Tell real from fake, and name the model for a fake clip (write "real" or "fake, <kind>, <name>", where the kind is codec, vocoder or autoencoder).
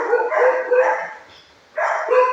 fake, vocoder, BigVGAN v2